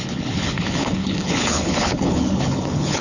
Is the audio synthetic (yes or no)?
yes